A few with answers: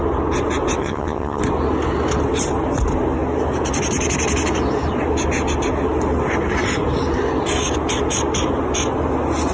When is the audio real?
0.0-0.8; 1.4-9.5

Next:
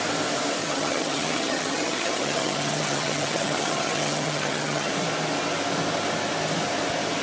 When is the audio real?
0.0-0.6; 4.9-7.2

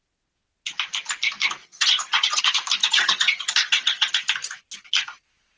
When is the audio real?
0.0-1.6; 2.4-2.8; 4.1-5.6

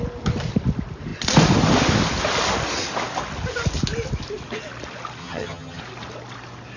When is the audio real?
0.0-5.2; 5.8-6.8